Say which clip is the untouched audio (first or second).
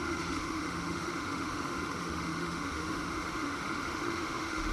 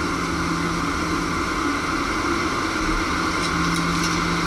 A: second